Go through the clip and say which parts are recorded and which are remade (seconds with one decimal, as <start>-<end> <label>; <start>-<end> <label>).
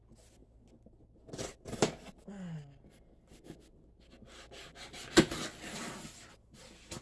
0.0-7.0 recorded